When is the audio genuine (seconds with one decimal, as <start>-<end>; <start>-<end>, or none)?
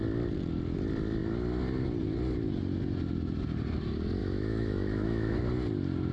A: 0.0-4.2; 5.4-6.1